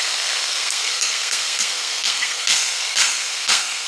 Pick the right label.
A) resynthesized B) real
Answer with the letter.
A